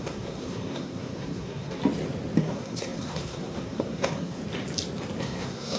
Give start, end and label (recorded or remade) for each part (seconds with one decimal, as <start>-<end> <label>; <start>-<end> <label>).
0.0-1.8 remade; 1.8-2.4 recorded; 2.4-4.4 remade; 4.4-5.2 recorded; 5.2-5.8 remade